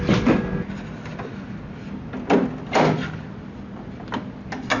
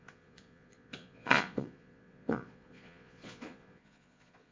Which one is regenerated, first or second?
second